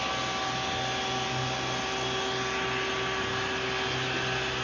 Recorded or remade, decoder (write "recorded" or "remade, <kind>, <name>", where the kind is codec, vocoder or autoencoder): recorded